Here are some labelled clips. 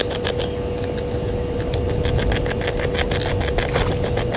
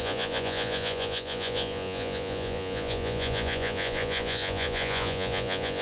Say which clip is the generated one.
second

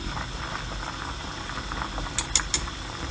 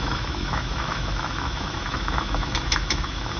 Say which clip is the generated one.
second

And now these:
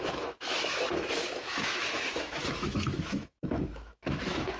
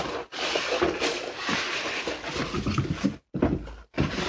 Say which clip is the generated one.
first